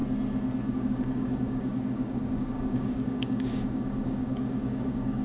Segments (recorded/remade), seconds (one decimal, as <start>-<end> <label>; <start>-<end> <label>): 0.0-0.7 recorded; 0.7-5.2 remade

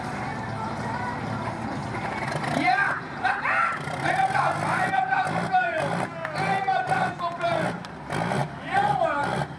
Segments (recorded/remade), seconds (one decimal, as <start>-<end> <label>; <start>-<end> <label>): 0.0-9.6 recorded